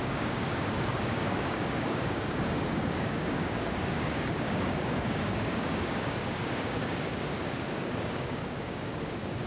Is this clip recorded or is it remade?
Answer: remade